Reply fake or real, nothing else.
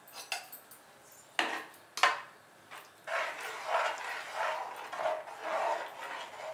real